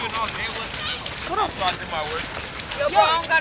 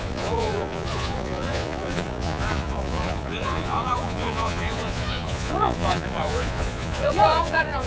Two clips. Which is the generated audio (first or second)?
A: second